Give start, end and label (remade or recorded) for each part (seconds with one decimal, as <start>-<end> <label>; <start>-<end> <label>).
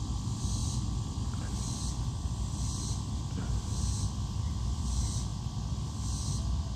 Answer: 0.0-6.8 recorded